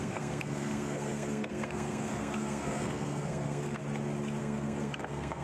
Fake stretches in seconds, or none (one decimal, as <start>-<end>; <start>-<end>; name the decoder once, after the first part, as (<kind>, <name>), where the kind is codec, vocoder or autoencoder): 0.0-3.8 (codec, SNAC); 4.4-5.4